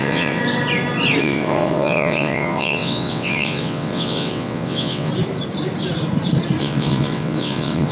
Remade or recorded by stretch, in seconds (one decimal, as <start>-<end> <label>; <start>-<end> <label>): 0.0-0.4 remade; 0.4-1.2 recorded; 1.2-5.1 remade; 5.1-6.6 recorded; 6.6-7.9 remade